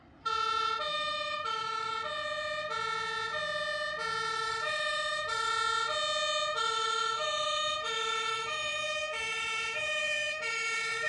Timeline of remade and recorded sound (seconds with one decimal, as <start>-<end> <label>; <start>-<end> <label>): 0.0-0.9 recorded; 0.9-1.9 remade; 1.9-4.3 recorded; 4.3-5.5 remade; 5.5-6.5 recorded; 6.5-11.1 remade